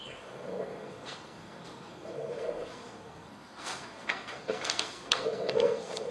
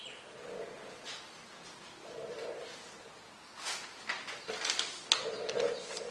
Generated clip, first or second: first